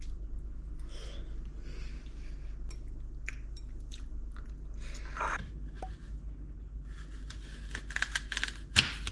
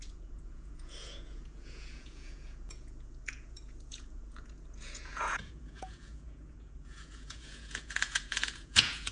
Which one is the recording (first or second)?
first